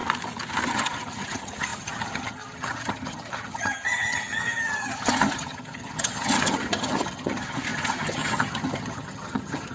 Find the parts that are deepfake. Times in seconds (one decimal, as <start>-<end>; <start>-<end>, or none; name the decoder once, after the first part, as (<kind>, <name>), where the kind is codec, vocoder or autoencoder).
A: 0.7-9.7 (vocoder, HiFi-GAN)